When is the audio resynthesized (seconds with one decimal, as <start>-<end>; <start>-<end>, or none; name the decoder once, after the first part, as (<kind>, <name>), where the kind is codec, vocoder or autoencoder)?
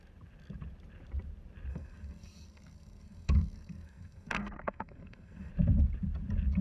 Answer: 1.7-5.5 (codec, SNAC)